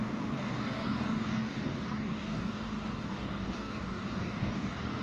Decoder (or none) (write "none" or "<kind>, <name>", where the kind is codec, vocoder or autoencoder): codec, DAC